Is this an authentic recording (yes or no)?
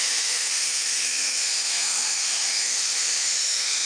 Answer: no